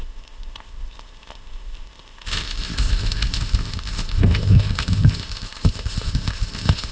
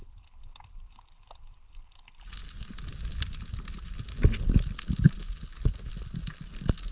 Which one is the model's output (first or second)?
first